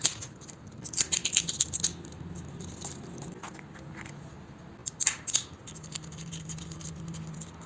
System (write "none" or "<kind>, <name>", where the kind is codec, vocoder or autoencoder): none